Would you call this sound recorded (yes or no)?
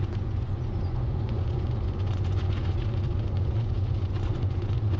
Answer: no